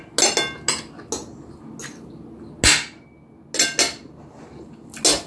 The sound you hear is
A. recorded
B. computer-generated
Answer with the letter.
A